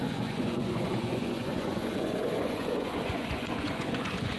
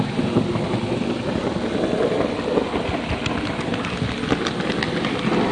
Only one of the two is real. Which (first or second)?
second